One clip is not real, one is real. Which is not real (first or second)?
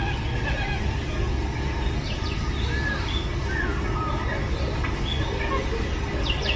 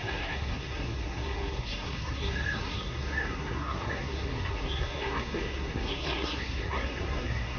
second